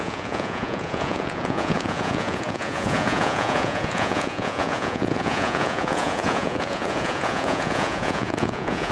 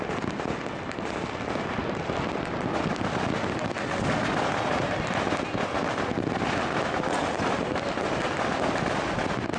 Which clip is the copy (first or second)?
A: first